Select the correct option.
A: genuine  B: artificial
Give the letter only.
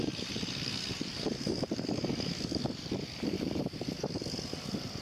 B